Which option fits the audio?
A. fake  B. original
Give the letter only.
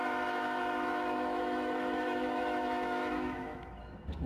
A